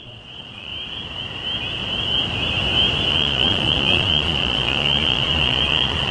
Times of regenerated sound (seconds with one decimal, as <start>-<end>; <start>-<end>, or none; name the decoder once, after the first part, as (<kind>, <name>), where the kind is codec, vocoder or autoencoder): 0.0-0.7 (vocoder, Vocos); 3.1-6.1

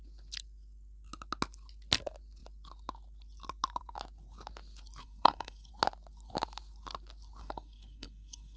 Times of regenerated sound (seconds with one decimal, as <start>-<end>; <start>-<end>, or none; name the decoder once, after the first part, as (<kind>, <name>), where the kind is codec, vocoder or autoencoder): 5.0-5.7 (codec, SNAC); 7.4-8.6